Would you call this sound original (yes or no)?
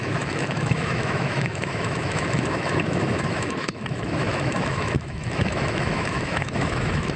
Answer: no